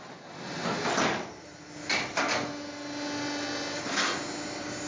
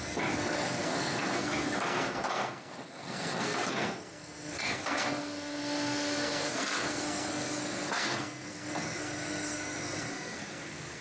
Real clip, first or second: first